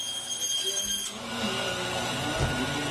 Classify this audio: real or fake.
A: real